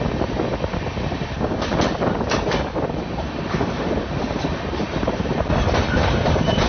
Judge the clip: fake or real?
real